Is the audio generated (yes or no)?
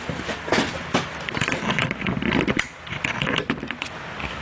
no